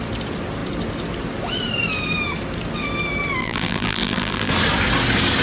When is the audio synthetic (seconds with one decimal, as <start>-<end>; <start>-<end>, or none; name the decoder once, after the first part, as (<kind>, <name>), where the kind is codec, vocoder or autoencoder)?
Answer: 3.4-4.5 (vocoder, BigVGAN v2)

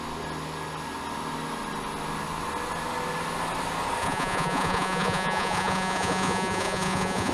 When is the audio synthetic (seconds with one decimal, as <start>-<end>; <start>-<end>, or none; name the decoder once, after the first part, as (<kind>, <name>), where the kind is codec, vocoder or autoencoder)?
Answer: 4.0-7.3 (vocoder, Vocos)

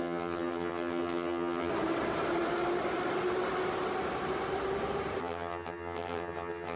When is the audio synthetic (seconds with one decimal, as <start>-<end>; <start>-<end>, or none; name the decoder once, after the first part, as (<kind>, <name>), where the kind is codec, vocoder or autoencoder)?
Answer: 0.0-1.7 (vocoder, HiFi-GAN); 5.2-6.8

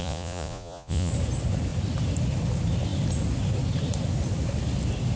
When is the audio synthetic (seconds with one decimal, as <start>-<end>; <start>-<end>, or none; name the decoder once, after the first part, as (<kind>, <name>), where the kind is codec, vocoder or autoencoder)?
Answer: 0.0-1.1 (vocoder, Vocos)

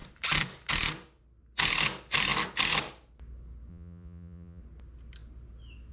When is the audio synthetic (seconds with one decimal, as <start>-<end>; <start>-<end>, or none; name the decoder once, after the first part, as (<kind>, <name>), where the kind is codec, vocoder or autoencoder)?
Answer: 3.7-4.6 (vocoder, Vocos)

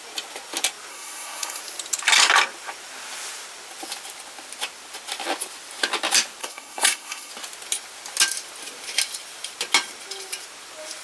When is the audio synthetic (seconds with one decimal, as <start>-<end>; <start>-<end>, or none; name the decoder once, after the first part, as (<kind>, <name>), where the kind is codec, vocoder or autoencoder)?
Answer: 0.9-1.6 (codec, SNAC); 6.4-7.3

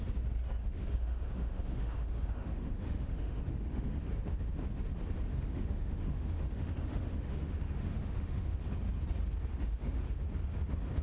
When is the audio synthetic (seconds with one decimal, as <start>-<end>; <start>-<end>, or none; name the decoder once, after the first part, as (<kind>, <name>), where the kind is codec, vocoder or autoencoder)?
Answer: 0.6-4.4 (autoencoder, DAC-VAE); 5.3-8.6; 9.5-10.2

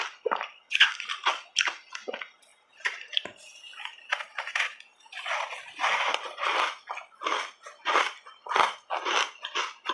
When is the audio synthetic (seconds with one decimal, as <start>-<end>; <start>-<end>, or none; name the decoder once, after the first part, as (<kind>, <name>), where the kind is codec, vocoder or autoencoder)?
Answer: 2.5-5.6 (vocoder, BigVGAN v2)